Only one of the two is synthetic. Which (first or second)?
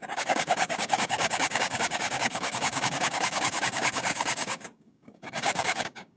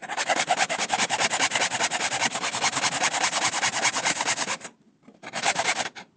first